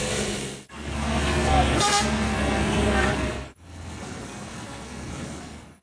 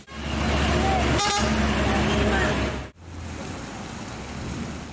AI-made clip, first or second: first